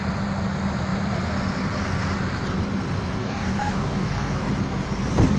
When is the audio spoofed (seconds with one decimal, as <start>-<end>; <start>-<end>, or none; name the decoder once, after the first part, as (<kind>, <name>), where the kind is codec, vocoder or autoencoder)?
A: 3.2-4.5 (codec, DAC)